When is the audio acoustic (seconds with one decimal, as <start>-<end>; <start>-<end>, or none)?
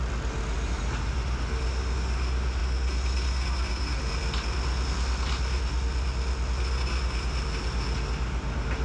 0.0-8.8